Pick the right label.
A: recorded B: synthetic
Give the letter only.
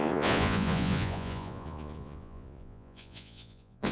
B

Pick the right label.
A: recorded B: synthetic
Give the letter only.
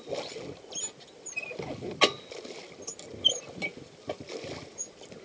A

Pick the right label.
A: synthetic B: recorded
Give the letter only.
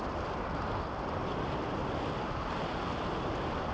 B